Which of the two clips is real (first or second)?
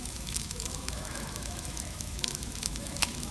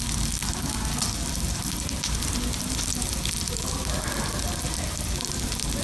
second